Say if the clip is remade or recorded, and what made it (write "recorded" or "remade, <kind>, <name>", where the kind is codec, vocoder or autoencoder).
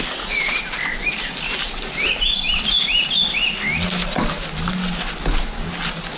recorded